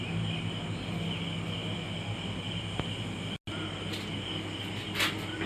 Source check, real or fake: real